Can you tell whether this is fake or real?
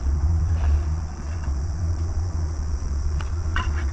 fake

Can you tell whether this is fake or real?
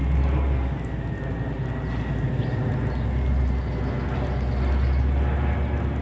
real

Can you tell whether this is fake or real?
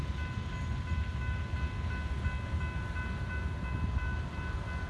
real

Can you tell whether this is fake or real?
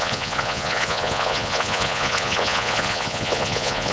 fake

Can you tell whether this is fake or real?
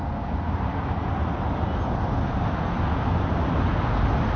real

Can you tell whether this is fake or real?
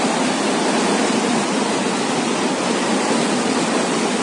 real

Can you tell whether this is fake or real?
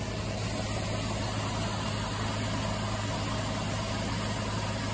real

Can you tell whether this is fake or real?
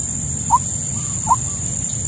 real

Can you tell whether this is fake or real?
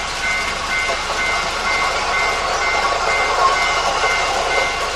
real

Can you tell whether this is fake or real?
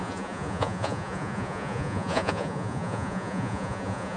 fake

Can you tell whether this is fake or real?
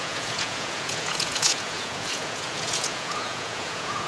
fake